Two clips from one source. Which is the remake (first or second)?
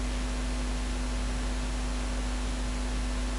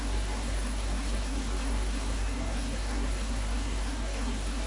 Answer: second